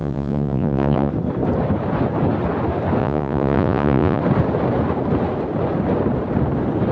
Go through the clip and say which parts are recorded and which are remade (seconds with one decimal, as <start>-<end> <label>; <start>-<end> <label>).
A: 0.0-1.1 remade; 1.1-3.0 recorded; 3.0-4.2 remade; 4.2-6.9 recorded